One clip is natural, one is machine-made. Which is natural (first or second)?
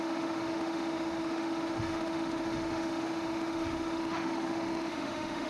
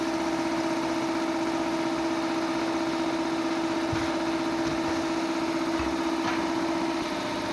second